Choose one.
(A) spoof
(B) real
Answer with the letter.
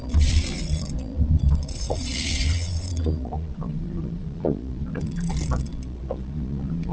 A